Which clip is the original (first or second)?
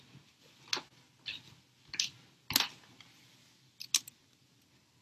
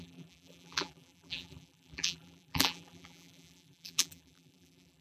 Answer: first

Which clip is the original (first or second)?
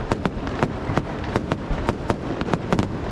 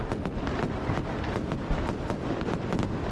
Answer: second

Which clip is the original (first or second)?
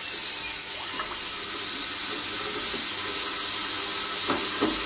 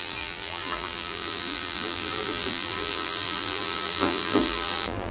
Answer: first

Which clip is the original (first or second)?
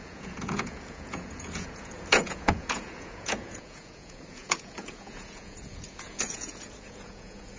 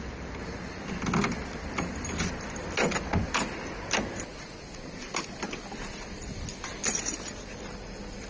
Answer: second